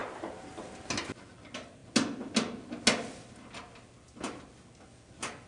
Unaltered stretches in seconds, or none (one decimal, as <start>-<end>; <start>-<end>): 0.0-5.5